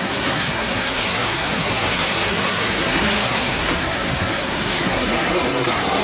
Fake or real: fake